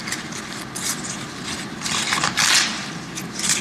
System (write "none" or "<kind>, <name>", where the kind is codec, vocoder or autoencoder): none